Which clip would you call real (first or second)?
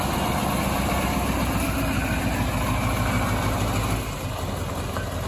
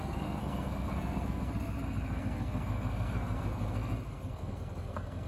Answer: first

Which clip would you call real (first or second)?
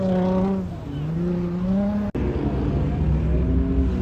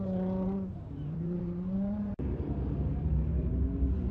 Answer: first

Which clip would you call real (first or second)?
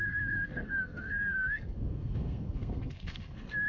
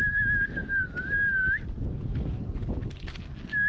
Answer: second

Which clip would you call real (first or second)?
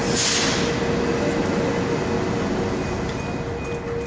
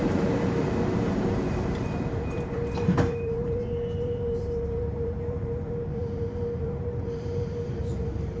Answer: first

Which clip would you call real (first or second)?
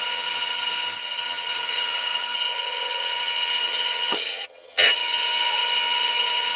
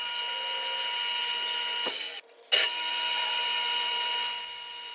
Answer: second